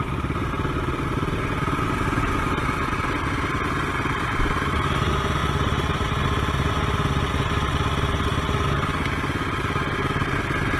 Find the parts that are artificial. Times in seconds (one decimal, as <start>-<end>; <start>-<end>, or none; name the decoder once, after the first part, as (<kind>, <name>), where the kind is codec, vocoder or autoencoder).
none